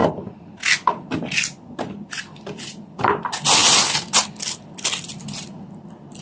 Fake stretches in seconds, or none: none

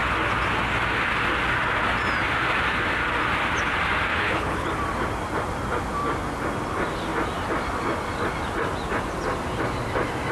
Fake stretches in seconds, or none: 4.1-4.7 (codec, HILCodec)

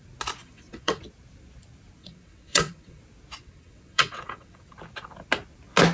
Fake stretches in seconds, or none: 0.4-1.0 (vocoder, WaveNeXt); 2.0-3.0; 3.4-4.7